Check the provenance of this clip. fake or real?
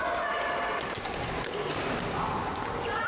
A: real